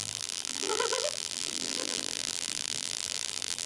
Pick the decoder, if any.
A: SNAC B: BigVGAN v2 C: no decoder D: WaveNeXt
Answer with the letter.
B